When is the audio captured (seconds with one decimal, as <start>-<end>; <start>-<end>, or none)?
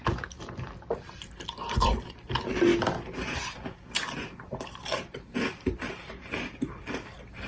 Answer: 0.0-7.5